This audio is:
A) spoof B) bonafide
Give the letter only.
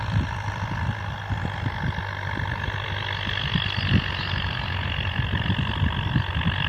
B